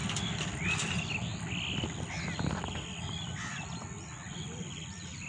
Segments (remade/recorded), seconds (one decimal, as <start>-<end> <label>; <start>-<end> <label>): 0.0-5.3 recorded

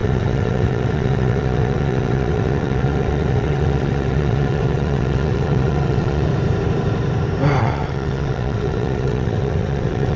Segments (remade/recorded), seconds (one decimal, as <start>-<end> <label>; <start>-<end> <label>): 0.0-6.3 remade; 6.3-7.6 recorded; 7.6-10.2 remade

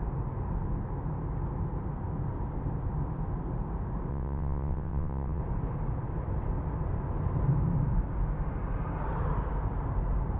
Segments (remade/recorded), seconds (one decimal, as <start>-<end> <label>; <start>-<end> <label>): 0.0-4.1 recorded; 4.1-5.4 remade; 5.4-10.4 recorded

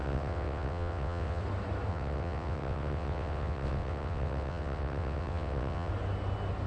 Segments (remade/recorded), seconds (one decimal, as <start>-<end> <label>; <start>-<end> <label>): 0.0-1.4 remade; 1.4-1.9 recorded; 1.9-5.9 remade; 5.9-6.7 recorded

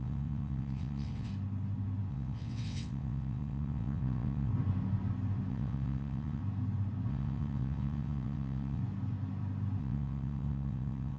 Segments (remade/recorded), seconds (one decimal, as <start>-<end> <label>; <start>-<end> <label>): 0.0-1.3 remade; 1.3-2.1 recorded; 2.1-4.5 remade; 4.5-5.5 recorded; 5.5-6.4 remade; 6.4-7.1 recorded; 7.1-8.8 remade; 8.8-9.8 recorded; 9.8-11.2 remade

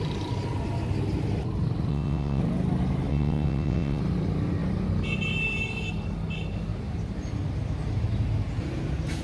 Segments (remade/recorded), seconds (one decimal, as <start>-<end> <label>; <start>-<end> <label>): 0.0-1.9 recorded; 1.9-2.4 remade; 2.4-3.1 recorded; 3.1-4.0 remade; 4.0-9.2 recorded